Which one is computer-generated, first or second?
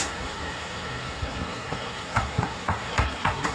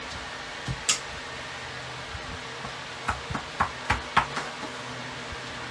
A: first